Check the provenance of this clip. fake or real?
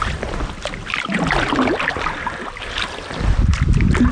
real